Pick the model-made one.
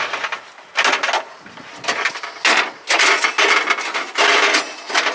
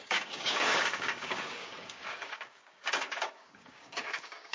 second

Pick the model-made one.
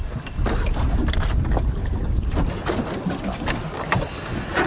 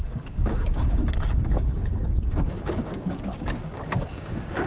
second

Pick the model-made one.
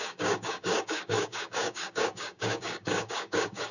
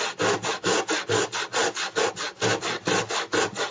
first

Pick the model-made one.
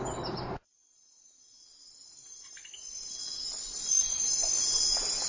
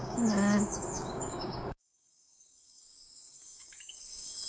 second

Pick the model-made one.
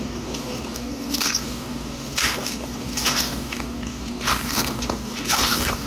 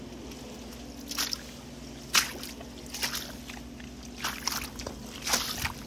first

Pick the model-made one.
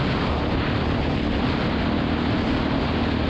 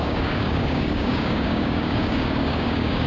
second